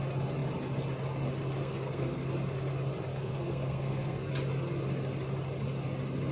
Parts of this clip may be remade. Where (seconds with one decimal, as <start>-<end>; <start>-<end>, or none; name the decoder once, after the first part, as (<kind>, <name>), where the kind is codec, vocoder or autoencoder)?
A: 1.6-2.3 (codec, SNAC); 3.1-4.3